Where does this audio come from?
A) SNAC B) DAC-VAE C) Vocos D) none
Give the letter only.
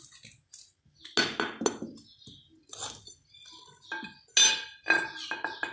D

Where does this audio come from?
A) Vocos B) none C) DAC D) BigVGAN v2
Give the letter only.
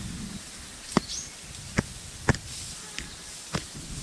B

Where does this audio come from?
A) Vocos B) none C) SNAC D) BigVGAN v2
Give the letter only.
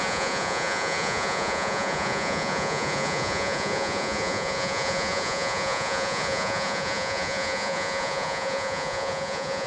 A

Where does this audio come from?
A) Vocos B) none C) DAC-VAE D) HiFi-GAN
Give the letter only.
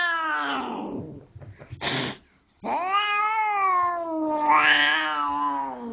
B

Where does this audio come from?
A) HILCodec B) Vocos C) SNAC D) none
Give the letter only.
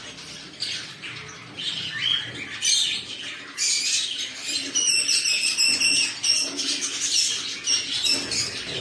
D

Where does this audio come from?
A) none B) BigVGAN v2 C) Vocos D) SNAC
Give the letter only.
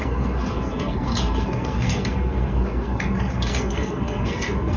D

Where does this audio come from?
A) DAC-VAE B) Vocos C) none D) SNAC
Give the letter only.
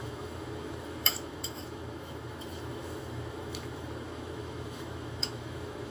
A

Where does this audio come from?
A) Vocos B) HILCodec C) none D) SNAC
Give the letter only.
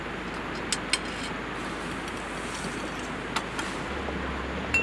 C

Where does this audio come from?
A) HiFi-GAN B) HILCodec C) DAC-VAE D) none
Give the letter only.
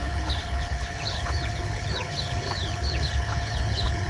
B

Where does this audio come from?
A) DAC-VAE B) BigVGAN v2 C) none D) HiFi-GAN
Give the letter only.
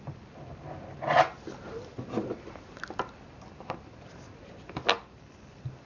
C